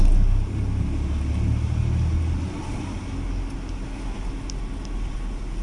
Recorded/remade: recorded